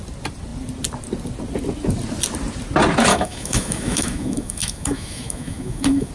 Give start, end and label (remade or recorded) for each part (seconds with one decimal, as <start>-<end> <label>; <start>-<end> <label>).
0.0-3.1 recorded; 3.1-6.1 remade